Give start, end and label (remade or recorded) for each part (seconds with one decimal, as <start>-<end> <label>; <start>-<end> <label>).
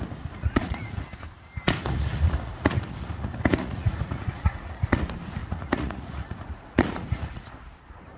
0.0-0.4 recorded; 0.4-1.0 remade; 1.0-1.8 recorded; 1.8-5.0 remade; 5.0-5.4 recorded; 5.4-7.5 remade; 7.5-8.2 recorded